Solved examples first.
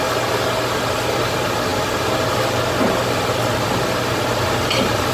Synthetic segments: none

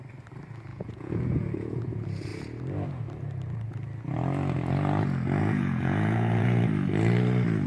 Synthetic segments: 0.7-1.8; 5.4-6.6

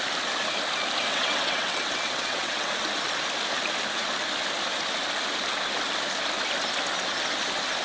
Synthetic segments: 1.1-2.7